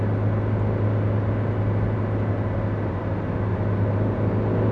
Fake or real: real